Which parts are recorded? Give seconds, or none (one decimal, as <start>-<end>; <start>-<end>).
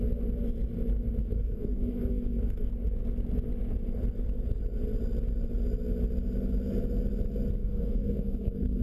0.0-1.2; 2.7-7.6